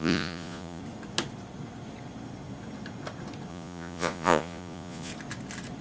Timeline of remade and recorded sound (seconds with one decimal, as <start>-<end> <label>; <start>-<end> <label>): 0.0-0.8 remade; 0.8-3.5 recorded; 3.5-5.1 remade; 5.1-5.8 recorded